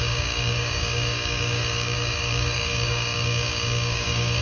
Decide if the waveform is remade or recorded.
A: remade